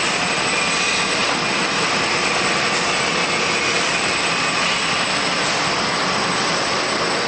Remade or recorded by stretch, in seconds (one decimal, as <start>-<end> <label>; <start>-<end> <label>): 0.0-7.3 recorded